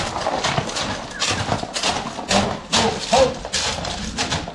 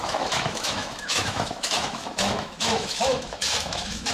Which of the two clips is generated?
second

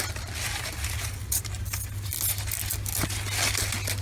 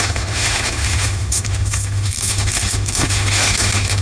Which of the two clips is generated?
second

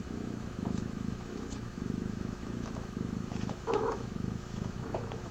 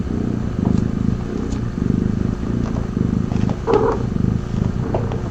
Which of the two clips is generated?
first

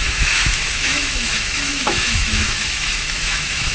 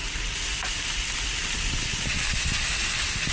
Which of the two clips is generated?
first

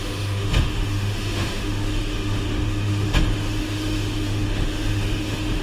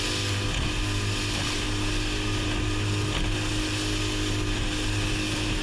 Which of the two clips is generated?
first